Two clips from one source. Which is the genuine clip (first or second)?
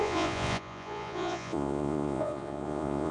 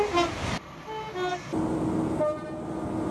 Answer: second